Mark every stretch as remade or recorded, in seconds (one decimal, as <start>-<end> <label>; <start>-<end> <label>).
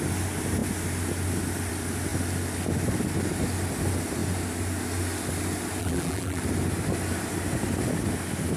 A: 0.0-5.8 recorded; 5.8-6.4 remade; 6.4-8.6 recorded